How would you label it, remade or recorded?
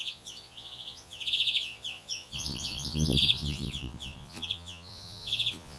remade